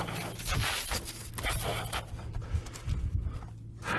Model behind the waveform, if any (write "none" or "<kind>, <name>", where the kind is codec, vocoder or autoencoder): none